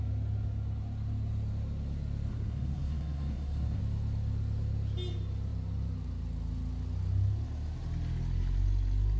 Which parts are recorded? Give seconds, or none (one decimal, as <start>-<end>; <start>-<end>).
0.0-2.3; 3.8-9.2